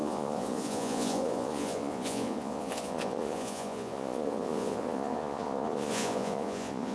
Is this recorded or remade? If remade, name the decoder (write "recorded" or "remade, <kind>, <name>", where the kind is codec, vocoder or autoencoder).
remade, vocoder, Vocos